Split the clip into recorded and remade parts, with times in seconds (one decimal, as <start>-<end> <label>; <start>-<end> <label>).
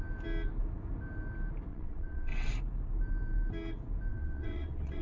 0.0-1.7 recorded; 1.7-2.5 remade; 2.5-4.1 recorded; 4.1-5.0 remade